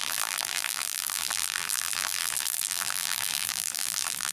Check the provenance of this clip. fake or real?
fake